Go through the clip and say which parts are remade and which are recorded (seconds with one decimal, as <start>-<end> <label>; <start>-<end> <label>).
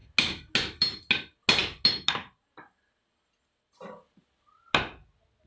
0.0-5.5 recorded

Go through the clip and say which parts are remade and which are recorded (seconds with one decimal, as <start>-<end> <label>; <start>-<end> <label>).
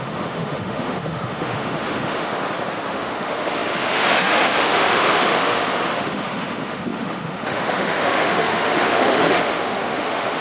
0.0-2.3 remade; 2.3-2.9 recorded; 2.9-10.4 remade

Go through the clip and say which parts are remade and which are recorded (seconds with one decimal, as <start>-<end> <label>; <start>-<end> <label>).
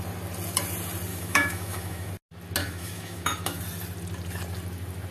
0.0-1.1 recorded; 1.1-2.1 remade; 2.1-2.6 recorded; 2.6-3.6 remade; 3.6-5.1 recorded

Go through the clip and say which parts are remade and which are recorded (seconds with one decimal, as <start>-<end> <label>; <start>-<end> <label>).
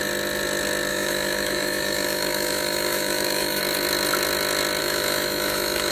0.0-0.9 recorded; 0.9-3.6 remade; 3.6-4.8 recorded; 4.8-5.9 remade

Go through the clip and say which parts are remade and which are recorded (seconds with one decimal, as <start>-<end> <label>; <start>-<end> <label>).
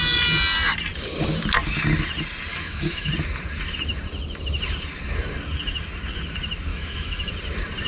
0.0-2.5 recorded; 2.5-3.1 remade; 3.1-6.7 recorded; 6.7-7.3 remade; 7.3-7.9 recorded